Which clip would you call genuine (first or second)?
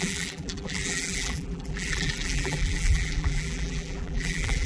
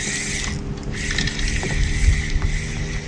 second